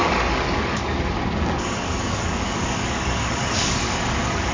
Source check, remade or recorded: remade